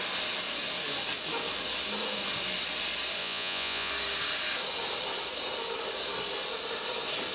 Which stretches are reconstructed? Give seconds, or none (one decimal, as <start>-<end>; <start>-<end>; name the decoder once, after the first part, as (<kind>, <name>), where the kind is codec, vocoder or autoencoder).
3.2-3.9 (vocoder, Vocos)